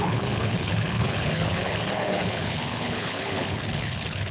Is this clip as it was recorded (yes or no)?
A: no